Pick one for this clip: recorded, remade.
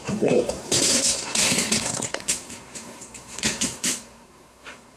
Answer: remade